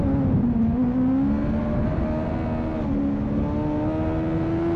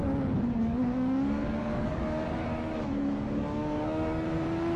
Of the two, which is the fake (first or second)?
second